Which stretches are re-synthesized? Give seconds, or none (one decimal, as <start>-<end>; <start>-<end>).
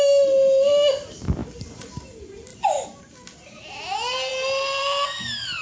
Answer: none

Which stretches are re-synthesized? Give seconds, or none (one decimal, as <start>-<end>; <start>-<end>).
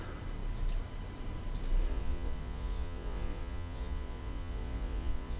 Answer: 1.9-5.4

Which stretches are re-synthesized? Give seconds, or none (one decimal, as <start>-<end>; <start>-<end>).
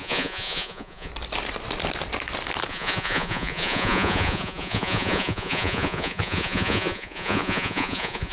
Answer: 0.0-1.1; 2.7-8.3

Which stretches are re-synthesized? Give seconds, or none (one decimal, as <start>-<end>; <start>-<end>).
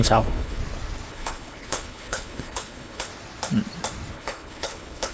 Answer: 0.0-0.6; 1.1-3.1; 4.1-5.1